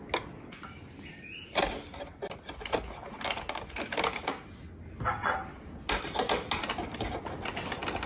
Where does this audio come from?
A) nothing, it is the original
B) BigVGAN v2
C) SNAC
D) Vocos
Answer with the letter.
A